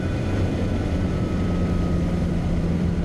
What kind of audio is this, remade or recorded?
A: remade